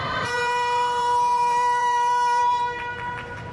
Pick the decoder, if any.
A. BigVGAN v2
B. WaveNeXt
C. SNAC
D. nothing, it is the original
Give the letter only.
A